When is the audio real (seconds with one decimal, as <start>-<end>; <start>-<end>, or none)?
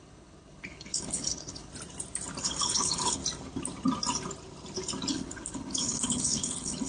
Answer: 1.7-2.4; 3.2-5.1